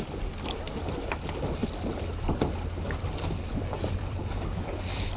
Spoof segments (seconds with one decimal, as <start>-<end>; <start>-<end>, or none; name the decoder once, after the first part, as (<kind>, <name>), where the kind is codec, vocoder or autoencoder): 1.6-4.7 (vocoder, BigVGAN v2)